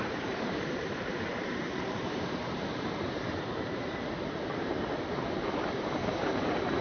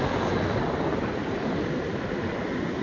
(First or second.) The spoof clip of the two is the first